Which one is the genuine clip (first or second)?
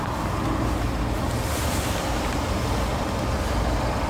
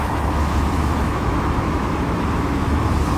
first